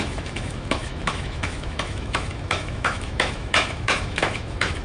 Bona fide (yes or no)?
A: no